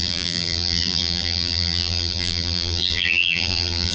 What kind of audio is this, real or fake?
fake